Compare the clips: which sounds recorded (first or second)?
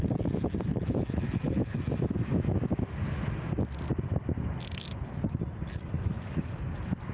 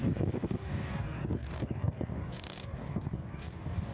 first